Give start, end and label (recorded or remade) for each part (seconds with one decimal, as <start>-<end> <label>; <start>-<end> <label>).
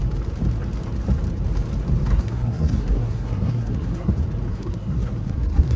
0.0-2.1 recorded; 2.1-4.1 remade; 4.1-4.5 recorded; 4.5-5.8 remade